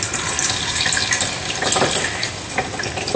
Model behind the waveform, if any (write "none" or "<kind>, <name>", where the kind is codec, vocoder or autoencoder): none